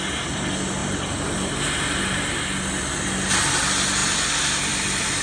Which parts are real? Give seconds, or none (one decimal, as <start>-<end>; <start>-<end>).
0.0-4.0